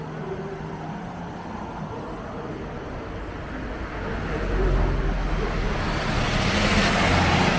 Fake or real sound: real